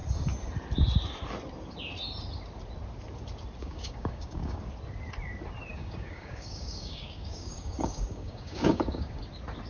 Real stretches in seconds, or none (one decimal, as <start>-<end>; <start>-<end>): 0.0-3.6; 4.6-5.7; 9.2-9.7